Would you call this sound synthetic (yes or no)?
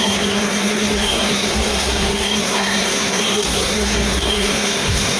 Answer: yes